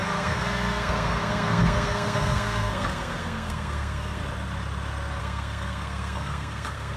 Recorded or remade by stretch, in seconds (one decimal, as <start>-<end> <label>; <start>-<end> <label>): 0.0-4.2 remade; 4.2-5.2 recorded; 5.2-7.0 remade